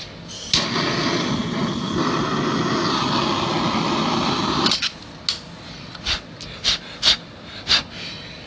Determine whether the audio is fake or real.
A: real